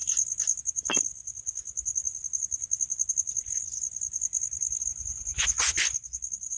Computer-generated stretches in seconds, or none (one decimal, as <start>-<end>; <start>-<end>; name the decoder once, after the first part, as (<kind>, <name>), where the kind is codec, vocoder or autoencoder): none